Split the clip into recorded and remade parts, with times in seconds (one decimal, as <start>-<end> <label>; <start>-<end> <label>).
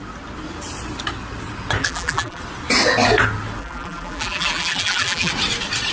0.0-1.8 recorded; 1.8-2.4 remade; 2.4-3.6 recorded; 3.6-5.3 remade; 5.3-5.9 recorded